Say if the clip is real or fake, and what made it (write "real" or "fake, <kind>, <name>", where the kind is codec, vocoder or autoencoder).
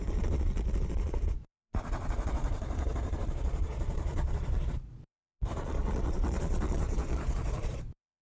fake, vocoder, Vocos